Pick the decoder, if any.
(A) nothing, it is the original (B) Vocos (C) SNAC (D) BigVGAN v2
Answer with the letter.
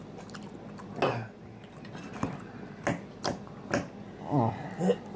A